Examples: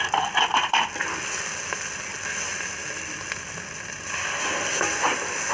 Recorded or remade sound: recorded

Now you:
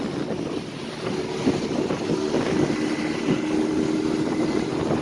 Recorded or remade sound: recorded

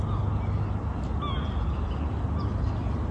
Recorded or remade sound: recorded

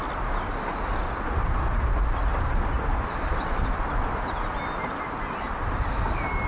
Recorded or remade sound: recorded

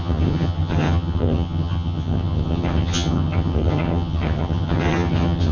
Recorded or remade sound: remade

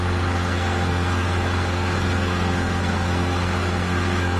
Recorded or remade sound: remade